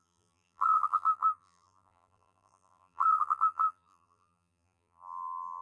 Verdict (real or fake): fake